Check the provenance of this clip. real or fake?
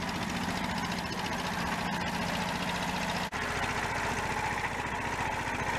real